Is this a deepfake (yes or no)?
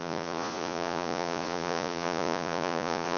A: yes